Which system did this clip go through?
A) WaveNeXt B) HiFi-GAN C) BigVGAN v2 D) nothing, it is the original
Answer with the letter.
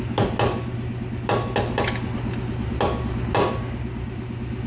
D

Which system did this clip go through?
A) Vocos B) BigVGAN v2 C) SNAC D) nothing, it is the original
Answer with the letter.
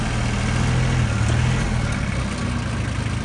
D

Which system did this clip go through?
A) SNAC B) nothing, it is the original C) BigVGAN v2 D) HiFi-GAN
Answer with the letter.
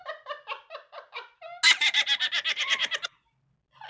B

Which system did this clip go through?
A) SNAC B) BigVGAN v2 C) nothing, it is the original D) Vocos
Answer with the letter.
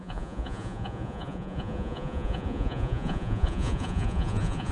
D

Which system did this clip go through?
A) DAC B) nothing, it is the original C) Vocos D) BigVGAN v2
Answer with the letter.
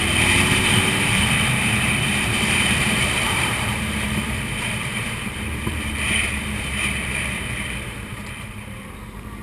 D